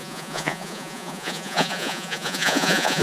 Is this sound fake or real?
fake